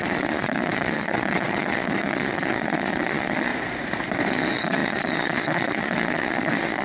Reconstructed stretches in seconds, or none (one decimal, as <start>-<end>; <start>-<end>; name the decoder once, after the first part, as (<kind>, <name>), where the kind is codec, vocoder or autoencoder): 0.0-3.5 (vocoder, Vocos); 4.3-6.8